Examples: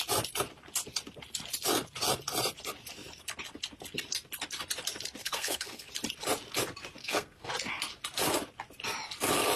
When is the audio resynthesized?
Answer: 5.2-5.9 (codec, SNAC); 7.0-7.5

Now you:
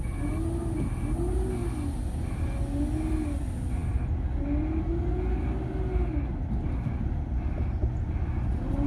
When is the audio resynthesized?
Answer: none

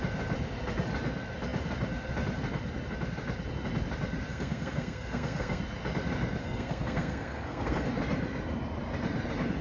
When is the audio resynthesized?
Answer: 4.3-5.6 (codec, SNAC); 6.4-7.9

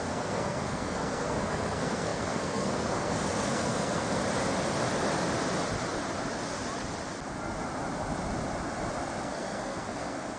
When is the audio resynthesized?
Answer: 0.0-4.2 (codec, SNAC); 9.2-10.4

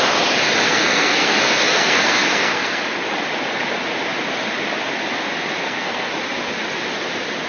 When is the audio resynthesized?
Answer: 0.6-2.8 (codec, SNAC); 5.6-6.1

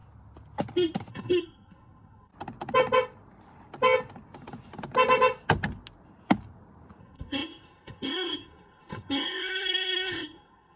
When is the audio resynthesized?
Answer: 1.1-2.3 (codec, SNAC); 7.0-10.8

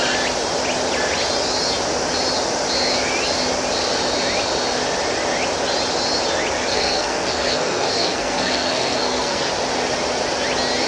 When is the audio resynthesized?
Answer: 6.7-9.5 (codec, SNAC)